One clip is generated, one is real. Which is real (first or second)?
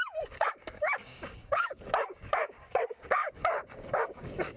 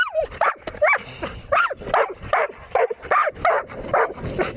second